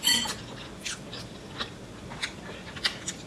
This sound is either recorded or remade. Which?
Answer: recorded